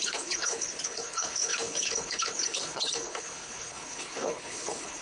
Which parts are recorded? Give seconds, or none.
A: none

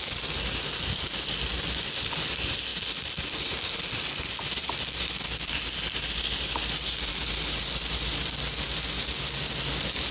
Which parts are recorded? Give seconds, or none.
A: 0.0-10.1